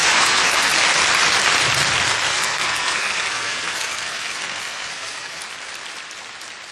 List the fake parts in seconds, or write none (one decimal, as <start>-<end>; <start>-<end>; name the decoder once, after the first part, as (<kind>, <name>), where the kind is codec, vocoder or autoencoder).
0.0-0.7 (codec, SNAC); 2.3-5.4